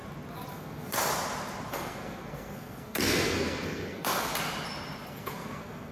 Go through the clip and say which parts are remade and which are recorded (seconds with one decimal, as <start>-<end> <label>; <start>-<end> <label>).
0.0-0.5 recorded; 0.5-1.1 remade; 1.1-1.7 recorded; 1.7-4.3 remade; 4.3-5.1 recorded; 5.1-5.9 remade